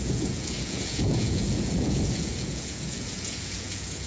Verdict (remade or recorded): remade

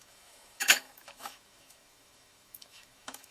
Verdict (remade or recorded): remade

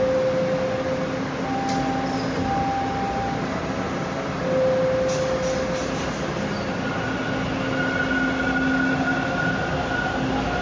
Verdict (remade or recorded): recorded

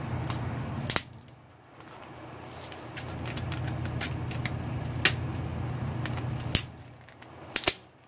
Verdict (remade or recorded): recorded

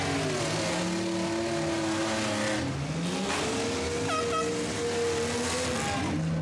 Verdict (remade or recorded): recorded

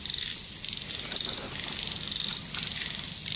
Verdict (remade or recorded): recorded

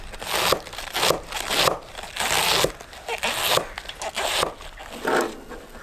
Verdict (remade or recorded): recorded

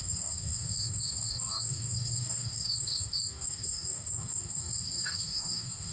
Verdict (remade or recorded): remade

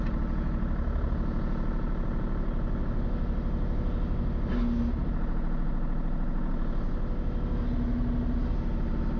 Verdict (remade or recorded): recorded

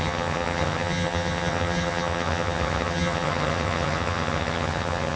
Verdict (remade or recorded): remade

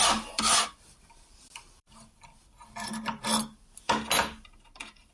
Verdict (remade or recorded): recorded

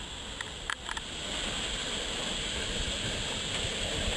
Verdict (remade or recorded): recorded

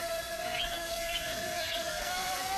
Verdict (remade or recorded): remade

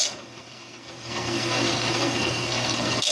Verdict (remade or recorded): remade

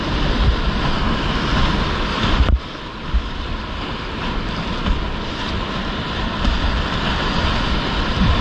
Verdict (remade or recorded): recorded